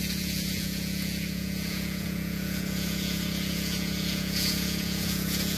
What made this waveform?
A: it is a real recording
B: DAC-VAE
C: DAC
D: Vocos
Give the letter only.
D